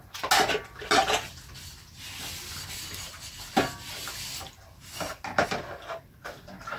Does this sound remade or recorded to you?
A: recorded